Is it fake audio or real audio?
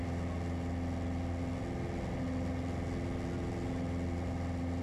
real